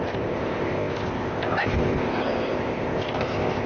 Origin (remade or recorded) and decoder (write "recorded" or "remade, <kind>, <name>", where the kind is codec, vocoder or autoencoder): remade, codec, ZipCodec